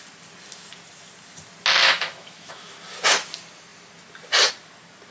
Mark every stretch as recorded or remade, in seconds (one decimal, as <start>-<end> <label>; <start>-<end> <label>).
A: 0.0-1.8 recorded; 1.8-2.7 remade; 2.7-5.1 recorded